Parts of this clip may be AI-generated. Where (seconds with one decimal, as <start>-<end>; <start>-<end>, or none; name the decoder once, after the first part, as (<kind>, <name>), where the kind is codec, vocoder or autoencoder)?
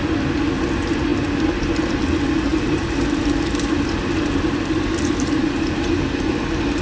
2.5-6.3 (vocoder, BigVGAN v2)